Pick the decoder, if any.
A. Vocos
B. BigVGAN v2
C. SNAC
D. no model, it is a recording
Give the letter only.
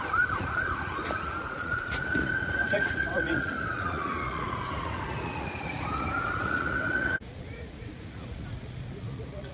A